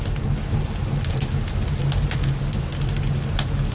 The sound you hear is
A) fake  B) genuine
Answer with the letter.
B